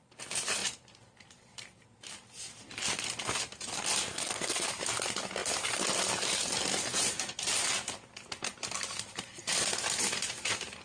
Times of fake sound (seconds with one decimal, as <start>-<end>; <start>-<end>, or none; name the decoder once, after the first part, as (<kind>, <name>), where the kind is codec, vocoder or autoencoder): 4.1-4.7 (codec, SNAC)